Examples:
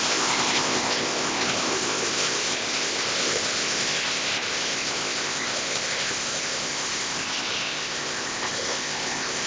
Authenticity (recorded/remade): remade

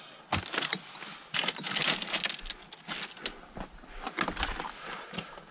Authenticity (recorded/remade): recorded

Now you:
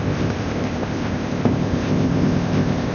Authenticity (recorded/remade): remade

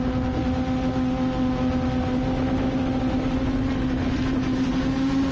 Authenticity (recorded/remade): recorded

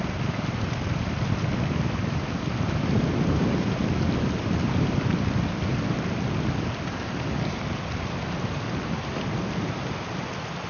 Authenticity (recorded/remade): recorded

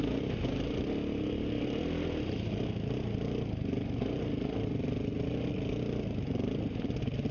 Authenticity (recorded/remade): recorded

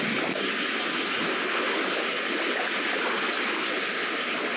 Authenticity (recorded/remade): recorded